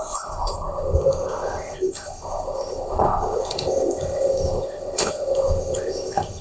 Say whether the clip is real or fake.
fake